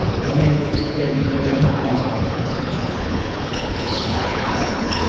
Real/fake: fake